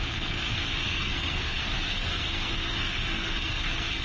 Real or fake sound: fake